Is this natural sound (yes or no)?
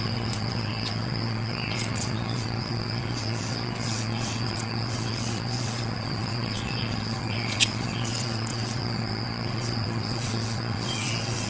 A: no